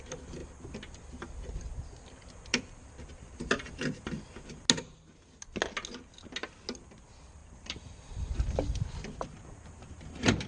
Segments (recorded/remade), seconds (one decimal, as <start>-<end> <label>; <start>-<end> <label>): 0.0-2.5 recorded; 2.5-3.7 remade; 3.7-7.4 recorded; 7.4-8.0 remade; 8.0-10.5 recorded